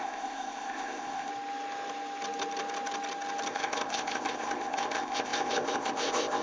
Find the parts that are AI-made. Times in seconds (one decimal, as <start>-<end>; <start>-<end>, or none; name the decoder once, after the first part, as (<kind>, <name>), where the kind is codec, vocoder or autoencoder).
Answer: 0.0-1.3 (codec, ZipCodec); 3.5-6.4